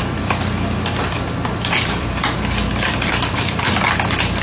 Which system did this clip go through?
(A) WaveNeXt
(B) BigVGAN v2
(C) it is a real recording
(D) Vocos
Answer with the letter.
B